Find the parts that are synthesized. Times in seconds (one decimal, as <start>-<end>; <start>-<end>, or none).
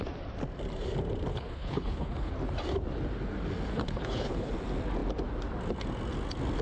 1.3-2.3; 3.7-4.5